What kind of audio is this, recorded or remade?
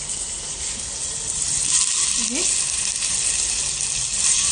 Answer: recorded